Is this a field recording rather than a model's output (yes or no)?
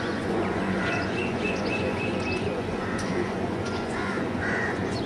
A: no